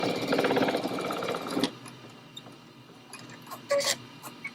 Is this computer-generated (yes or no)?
no